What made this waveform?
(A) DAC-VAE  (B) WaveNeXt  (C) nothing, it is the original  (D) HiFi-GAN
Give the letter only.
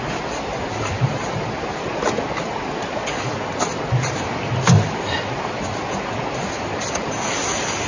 C